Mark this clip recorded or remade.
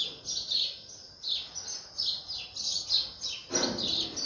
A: recorded